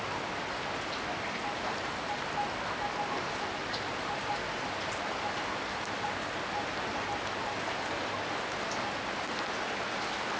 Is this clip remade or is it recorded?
recorded